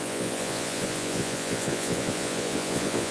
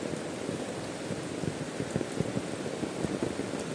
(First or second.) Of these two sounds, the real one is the second